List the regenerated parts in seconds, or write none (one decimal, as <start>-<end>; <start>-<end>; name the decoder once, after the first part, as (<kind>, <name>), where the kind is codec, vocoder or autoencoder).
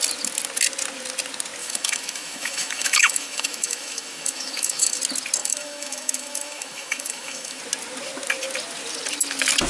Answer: 1.6-5.0 (autoencoder, DAC-VAE); 5.4-7.6